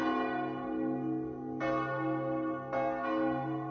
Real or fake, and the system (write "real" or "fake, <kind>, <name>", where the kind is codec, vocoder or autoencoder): real